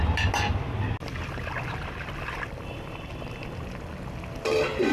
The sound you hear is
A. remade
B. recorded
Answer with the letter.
B